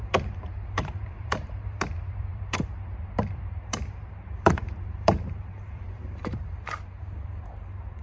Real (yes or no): no